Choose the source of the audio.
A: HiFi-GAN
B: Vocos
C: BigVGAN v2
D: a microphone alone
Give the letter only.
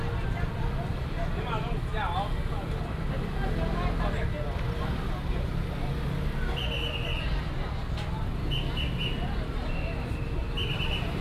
D